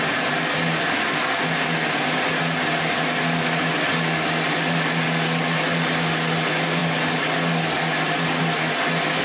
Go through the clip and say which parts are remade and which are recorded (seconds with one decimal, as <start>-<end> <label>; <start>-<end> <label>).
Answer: 0.0-9.2 recorded